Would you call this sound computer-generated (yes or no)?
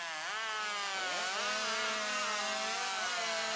no